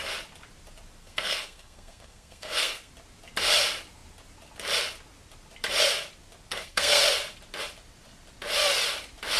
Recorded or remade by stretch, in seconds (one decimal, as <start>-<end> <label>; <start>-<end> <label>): 0.0-1.0 recorded; 1.0-2.9 remade; 2.9-6.5 recorded; 6.5-7.0 remade; 7.0-9.4 recorded